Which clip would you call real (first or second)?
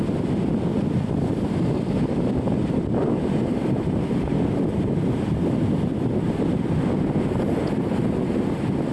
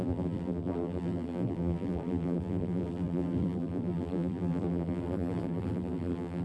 first